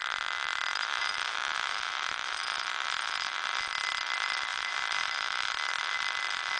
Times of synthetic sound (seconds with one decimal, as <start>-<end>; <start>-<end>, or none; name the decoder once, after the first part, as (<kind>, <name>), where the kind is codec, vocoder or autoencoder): 0.7-2.7 (vocoder, BigVGAN v2); 4.5-5.5